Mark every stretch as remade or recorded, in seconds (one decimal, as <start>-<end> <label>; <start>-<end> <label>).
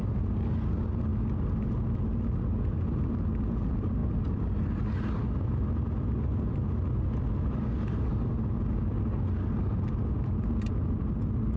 0.0-11.6 recorded